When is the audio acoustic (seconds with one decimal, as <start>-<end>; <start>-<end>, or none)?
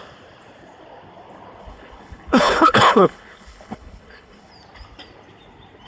0.0-1.6; 4.5-5.9